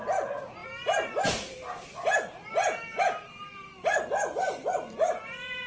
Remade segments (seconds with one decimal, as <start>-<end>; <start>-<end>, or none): none